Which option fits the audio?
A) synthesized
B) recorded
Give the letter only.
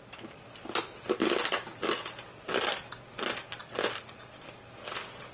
B